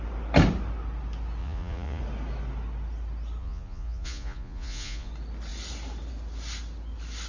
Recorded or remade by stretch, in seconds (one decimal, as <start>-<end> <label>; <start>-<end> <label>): 0.0-1.4 recorded; 1.4-2.0 remade; 2.0-3.4 recorded; 3.4-5.1 remade; 5.1-7.3 recorded